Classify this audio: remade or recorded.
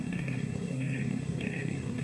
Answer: remade